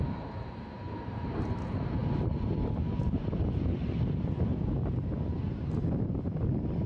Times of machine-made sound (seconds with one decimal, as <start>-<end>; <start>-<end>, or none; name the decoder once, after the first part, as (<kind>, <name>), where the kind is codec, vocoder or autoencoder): 0.0-4.5 (vocoder, BigVGAN v2); 6.1-6.9